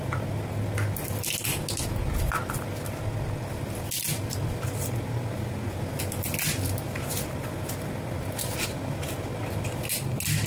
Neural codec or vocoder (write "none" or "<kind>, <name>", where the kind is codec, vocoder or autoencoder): none